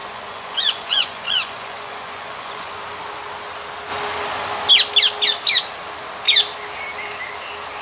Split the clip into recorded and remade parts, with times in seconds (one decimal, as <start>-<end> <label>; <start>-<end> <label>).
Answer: 0.0-2.8 remade; 2.8-7.8 recorded